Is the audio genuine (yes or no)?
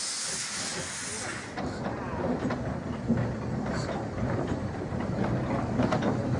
yes